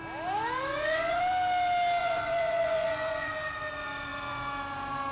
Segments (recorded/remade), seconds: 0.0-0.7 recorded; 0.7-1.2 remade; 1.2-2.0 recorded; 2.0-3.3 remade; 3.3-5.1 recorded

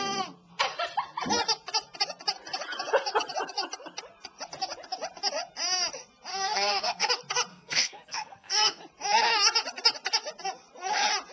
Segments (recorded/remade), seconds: 0.0-6.3 recorded; 6.3-7.1 remade; 7.1-7.5 recorded; 7.5-8.8 remade; 8.8-11.3 recorded

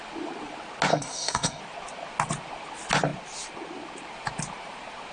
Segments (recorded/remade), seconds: 0.0-0.9 recorded; 0.9-1.6 remade; 1.6-5.1 recorded

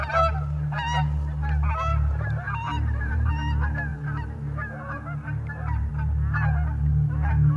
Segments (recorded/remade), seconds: 0.0-1.9 recorded; 1.9-3.3 remade; 3.3-3.9 recorded; 3.9-5.9 remade; 5.9-7.6 recorded

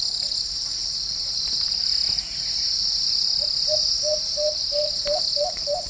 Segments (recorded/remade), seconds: 0.0-5.9 recorded